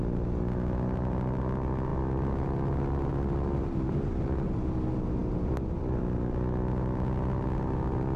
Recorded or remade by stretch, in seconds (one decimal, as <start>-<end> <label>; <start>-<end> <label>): 0.0-8.2 recorded